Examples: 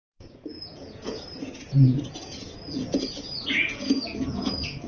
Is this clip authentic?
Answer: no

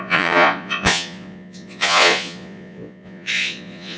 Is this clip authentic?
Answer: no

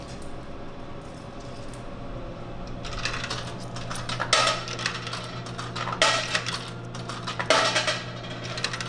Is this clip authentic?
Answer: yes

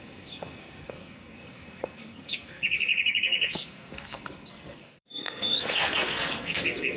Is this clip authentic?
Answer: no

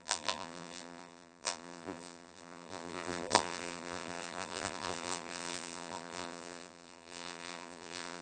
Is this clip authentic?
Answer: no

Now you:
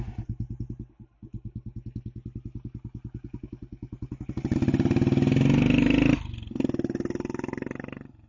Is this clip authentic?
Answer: yes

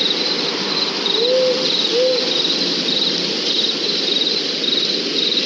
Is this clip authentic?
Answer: yes